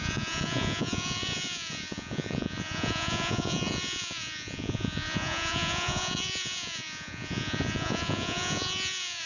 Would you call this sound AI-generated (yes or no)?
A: yes